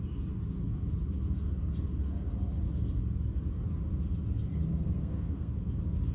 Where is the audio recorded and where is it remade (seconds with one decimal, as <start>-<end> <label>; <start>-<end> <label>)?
0.0-4.7 recorded; 4.7-5.5 remade; 5.5-6.1 recorded